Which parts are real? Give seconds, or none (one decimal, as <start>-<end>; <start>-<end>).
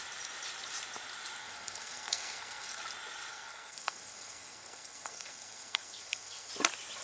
0.0-1.4; 2.8-3.3; 6.5-7.0